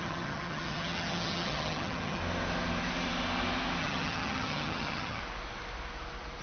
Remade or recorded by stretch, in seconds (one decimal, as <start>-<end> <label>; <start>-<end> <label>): 0.0-2.2 remade; 2.2-3.8 recorded; 3.8-5.2 remade; 5.2-6.4 recorded